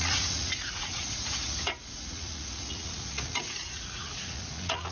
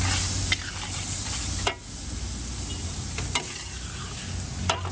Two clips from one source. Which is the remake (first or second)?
first